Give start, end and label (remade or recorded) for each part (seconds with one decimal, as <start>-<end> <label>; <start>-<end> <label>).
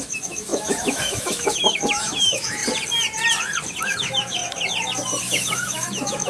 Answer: 0.0-2.6 remade; 2.6-3.8 recorded; 3.8-4.4 remade; 4.4-5.2 recorded; 5.2-6.3 remade